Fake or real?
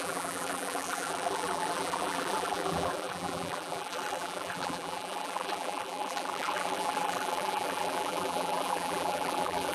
fake